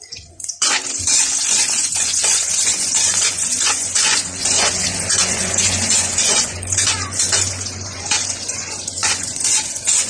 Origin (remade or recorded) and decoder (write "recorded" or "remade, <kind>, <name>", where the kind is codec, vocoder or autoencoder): remade, vocoder, Vocos